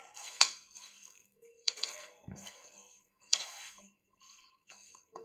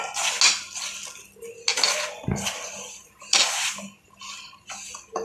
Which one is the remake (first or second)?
first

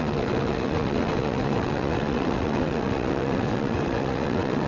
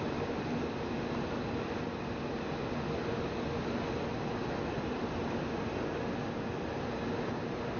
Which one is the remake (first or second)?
first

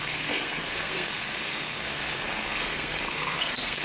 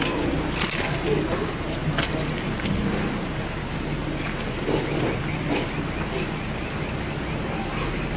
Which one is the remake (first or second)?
first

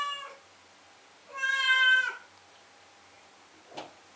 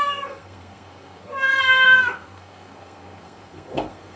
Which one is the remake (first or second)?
second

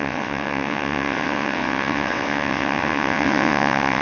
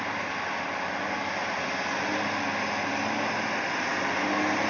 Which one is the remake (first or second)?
first